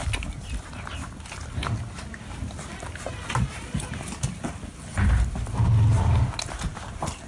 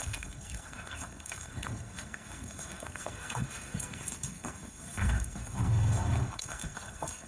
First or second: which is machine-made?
second